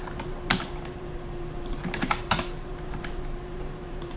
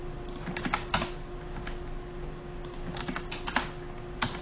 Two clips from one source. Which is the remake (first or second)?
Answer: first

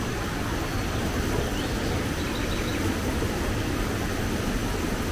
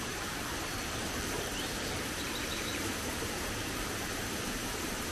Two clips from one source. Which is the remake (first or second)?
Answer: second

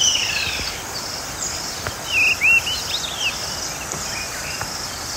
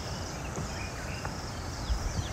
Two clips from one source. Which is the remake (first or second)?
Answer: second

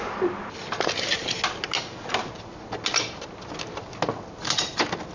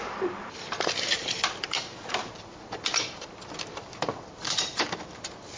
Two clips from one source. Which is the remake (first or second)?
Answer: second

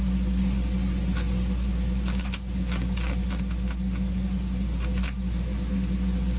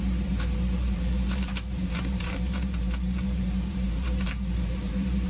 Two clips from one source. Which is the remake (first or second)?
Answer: second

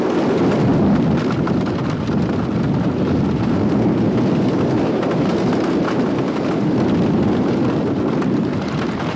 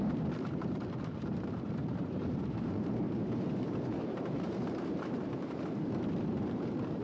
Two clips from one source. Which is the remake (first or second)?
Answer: second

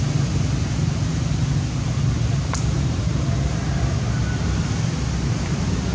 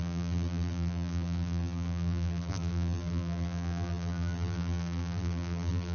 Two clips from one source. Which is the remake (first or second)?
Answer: second